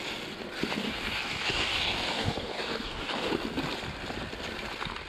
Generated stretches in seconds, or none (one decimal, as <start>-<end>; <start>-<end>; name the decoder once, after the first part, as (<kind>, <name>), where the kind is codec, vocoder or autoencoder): 0.8-3.3 (codec, DAC)

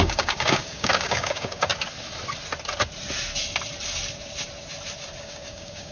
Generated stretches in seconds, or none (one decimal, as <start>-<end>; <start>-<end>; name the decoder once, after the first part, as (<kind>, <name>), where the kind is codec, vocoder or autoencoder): 0.0-1.7 (codec, DAC); 5.2-5.9

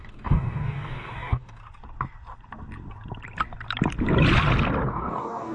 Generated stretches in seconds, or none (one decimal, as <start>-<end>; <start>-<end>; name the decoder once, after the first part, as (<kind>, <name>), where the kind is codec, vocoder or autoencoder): 0.0-1.6 (codec, DAC); 4.9-5.5

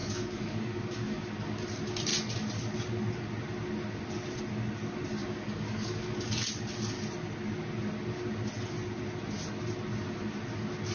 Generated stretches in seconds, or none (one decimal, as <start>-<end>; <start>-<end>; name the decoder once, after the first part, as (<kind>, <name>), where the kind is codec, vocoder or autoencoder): 0.0-1.6 (codec, DAC); 5.2-6.3

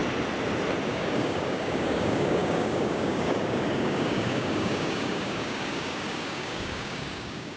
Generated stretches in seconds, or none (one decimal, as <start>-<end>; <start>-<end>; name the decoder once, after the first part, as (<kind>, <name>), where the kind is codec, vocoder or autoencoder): 0.9-7.6 (codec, DAC)

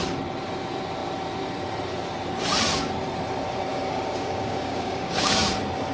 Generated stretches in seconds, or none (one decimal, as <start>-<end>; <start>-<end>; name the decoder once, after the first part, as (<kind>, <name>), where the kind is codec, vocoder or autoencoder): 3.7-5.5 (codec, DAC)

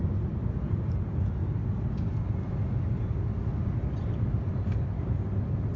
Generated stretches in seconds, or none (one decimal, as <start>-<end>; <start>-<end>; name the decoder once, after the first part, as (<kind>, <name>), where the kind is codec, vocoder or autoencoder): none

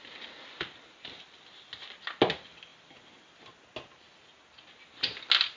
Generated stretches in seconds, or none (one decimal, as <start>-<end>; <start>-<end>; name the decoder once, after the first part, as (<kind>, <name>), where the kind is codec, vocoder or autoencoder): none